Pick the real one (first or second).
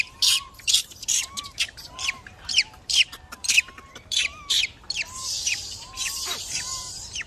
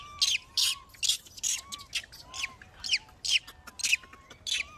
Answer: second